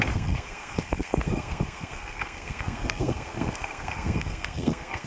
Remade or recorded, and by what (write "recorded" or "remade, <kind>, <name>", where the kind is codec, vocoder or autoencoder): remade, codec, SNAC